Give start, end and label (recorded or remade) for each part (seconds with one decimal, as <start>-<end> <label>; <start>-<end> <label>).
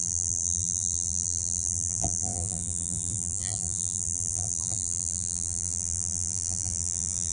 0.0-7.3 remade